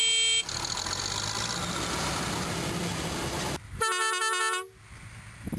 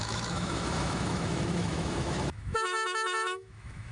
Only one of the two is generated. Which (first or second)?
second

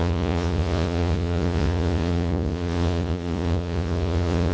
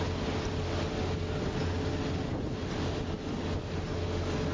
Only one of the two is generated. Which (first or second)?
first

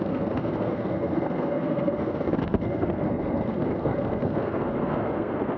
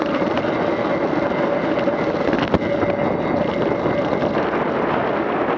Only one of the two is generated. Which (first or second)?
first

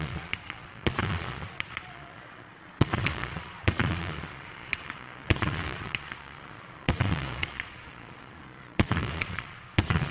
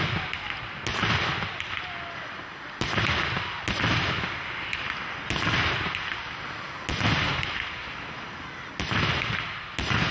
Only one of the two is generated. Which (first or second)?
first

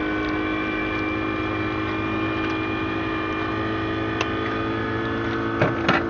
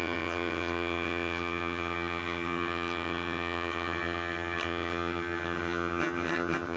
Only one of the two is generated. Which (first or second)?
second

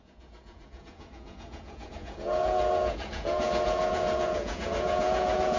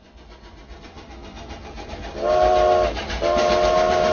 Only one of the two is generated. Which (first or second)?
first